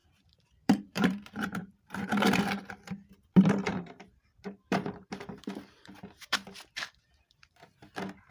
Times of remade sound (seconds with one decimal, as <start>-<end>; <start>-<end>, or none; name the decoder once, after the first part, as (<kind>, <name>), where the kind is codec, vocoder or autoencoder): 0.0-2.4 (vocoder, BigVGAN v2); 3.7-7.9